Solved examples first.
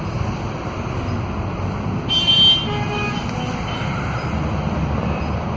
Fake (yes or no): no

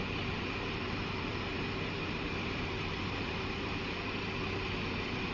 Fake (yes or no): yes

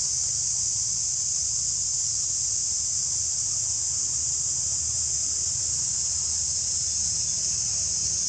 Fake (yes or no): no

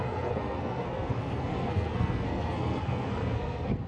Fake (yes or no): yes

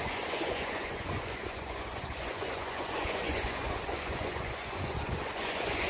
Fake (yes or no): yes